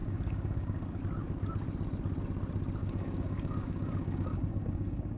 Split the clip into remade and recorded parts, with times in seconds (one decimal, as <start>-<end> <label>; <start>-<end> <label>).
0.0-1.0 remade; 1.0-2.8 recorded; 2.8-5.2 remade